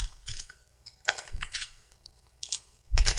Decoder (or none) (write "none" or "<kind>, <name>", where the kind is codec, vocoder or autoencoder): codec, SNAC